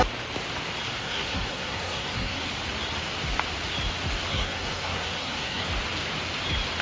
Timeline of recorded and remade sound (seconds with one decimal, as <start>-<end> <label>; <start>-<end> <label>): 0.0-1.0 recorded; 1.0-2.5 remade; 2.5-4.3 recorded; 4.3-5.7 remade; 5.7-6.8 recorded